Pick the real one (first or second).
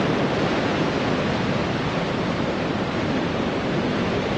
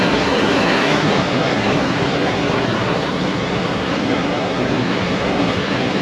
first